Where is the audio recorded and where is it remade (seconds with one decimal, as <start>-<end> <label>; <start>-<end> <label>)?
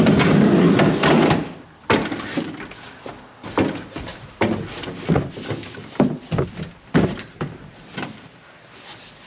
0.0-9.3 recorded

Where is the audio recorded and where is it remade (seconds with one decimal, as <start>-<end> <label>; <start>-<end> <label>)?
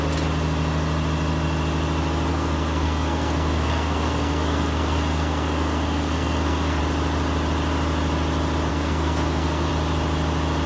0.0-2.3 recorded; 2.3-6.8 remade; 6.8-8.7 recorded; 8.7-9.7 remade; 9.7-10.7 recorded